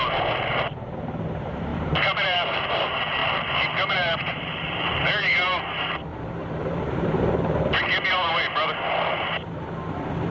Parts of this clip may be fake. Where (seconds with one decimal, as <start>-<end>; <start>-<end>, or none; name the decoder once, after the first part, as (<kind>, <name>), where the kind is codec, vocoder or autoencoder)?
1.7-2.7 (vocoder, BigVGAN v2); 3.2-5.0; 6.1-7.2